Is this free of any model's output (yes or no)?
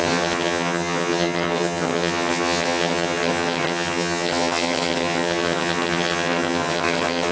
no